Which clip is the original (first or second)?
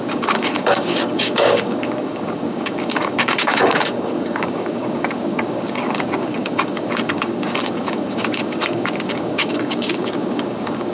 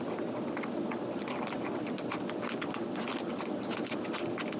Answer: second